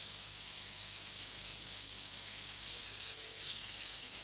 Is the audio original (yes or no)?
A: no